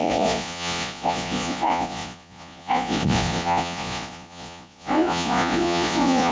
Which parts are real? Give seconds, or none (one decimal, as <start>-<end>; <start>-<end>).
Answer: none